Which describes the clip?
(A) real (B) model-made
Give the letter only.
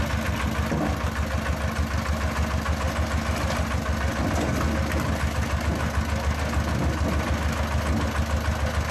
A